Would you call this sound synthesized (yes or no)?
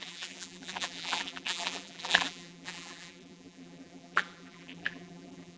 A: yes